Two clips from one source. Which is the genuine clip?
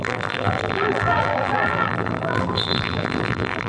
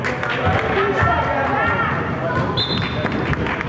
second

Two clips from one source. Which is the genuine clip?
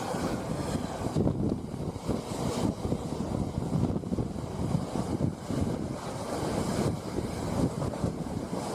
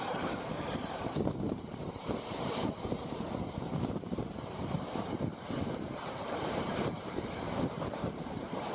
first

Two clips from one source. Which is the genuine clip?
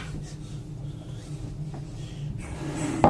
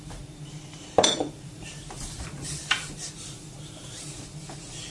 first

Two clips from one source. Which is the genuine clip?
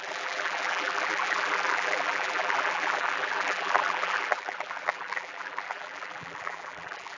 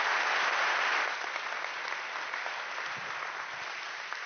second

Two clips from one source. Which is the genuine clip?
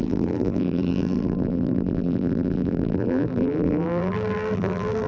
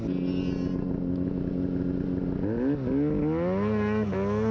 second